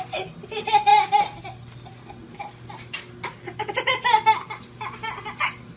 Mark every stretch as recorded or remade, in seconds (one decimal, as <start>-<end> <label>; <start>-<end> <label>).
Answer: 0.0-5.8 recorded